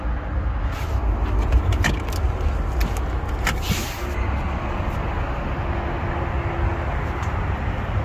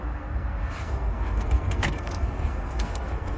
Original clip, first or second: first